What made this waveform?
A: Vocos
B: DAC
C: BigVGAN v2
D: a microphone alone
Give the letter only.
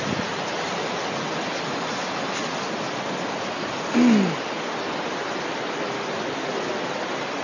D